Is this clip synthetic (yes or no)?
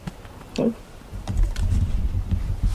no